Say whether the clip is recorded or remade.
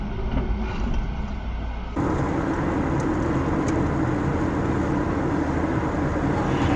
recorded